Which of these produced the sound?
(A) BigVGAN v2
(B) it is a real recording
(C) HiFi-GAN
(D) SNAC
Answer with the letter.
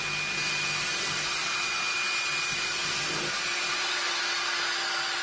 B